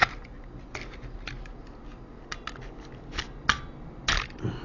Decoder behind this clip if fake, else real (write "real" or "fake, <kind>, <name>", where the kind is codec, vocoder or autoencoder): real